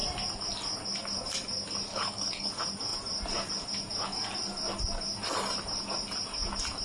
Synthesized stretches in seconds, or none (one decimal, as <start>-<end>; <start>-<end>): 1.9-2.5